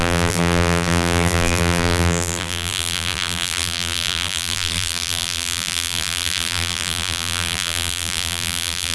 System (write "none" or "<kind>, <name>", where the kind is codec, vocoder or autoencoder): vocoder, BigVGAN v2